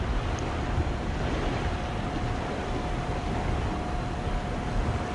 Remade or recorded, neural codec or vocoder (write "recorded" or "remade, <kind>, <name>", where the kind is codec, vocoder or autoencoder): recorded